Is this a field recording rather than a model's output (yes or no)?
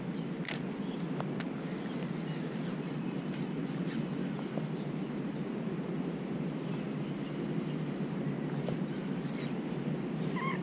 yes